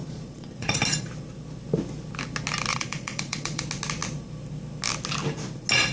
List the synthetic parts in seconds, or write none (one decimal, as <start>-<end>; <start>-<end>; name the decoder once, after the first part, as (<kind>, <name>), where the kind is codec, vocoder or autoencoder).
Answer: 0.0-0.8 (vocoder, Vocos); 2.7-3.6